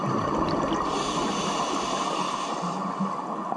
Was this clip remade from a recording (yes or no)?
no